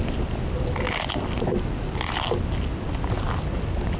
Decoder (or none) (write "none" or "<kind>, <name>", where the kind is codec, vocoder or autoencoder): none